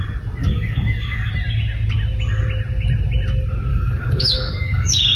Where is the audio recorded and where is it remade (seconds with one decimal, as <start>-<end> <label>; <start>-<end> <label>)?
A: 0.0-0.4 recorded; 0.4-1.3 remade; 1.3-3.7 recorded; 3.7-5.1 remade